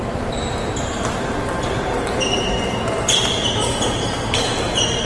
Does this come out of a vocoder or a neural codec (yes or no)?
yes